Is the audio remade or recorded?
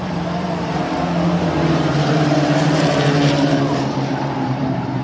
remade